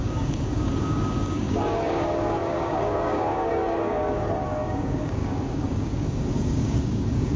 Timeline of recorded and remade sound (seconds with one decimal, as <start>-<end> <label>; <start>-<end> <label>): 0.0-7.4 remade